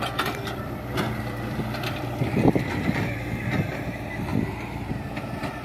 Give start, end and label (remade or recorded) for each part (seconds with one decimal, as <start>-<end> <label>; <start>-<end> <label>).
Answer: 0.0-5.6 remade